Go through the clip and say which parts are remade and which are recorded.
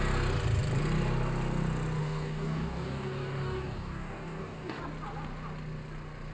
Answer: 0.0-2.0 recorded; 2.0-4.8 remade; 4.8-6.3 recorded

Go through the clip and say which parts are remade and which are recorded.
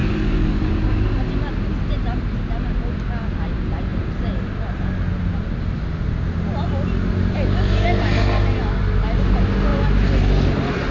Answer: 0.0-0.7 remade; 0.7-10.9 recorded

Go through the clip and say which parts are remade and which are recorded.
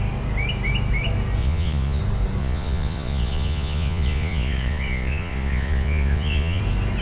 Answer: 0.0-1.4 recorded; 1.4-2.0 remade; 2.0-2.4 recorded; 2.4-6.6 remade; 6.6-7.0 recorded